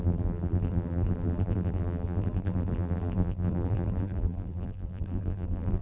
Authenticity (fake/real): fake